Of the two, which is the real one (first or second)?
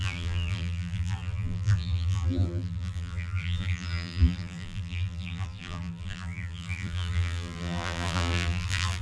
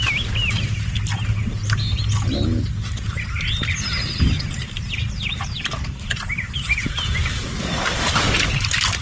second